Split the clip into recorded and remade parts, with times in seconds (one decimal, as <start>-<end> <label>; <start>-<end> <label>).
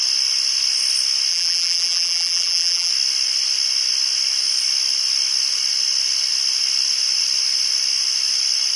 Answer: 0.0-1.3 recorded; 1.3-2.9 remade; 2.9-8.8 recorded